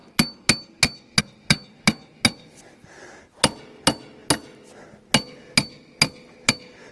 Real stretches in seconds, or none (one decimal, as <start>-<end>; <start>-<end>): 0.0-6.9